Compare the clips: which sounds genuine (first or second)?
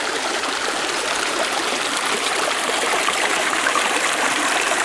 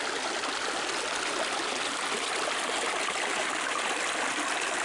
second